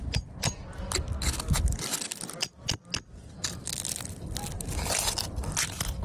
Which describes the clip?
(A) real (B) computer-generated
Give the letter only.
A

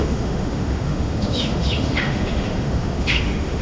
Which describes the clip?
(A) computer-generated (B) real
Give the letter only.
A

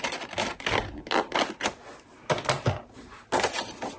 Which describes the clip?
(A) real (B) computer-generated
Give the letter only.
A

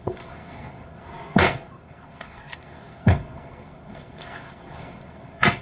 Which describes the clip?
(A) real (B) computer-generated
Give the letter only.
B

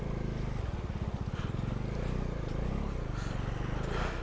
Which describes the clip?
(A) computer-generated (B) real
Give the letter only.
B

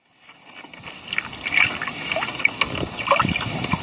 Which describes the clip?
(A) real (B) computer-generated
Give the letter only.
A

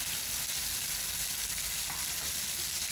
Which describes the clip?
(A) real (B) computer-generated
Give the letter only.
A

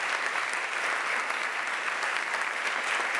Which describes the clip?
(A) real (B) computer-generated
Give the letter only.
A